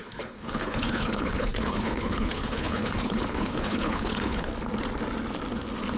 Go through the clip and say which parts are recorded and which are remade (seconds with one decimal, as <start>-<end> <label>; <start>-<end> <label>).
0.0-4.5 remade; 4.5-6.0 recorded